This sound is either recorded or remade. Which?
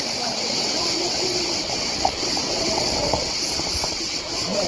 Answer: remade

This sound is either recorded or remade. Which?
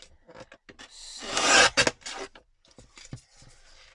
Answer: recorded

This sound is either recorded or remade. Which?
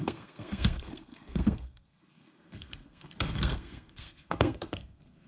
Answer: remade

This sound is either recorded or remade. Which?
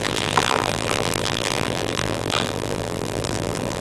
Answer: remade